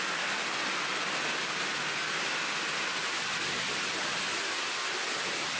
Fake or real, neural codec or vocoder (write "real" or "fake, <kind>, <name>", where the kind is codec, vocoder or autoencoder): real